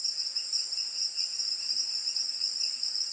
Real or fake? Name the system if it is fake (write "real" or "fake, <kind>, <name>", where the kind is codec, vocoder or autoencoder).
real